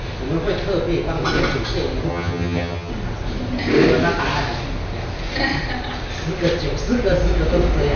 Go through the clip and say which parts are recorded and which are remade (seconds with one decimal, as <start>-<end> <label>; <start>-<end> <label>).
0.0-2.1 recorded; 2.1-2.9 remade; 2.9-8.0 recorded